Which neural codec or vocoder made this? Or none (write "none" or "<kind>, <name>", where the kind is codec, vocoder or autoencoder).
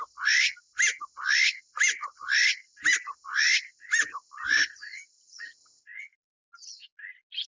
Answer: none